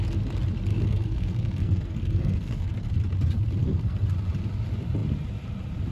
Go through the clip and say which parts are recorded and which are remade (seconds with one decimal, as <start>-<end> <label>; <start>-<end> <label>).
0.0-0.7 recorded; 0.7-2.9 remade; 2.9-3.6 recorded; 3.6-4.1 remade; 4.1-5.9 recorded